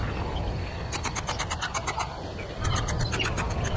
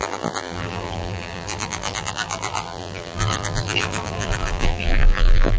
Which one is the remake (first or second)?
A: second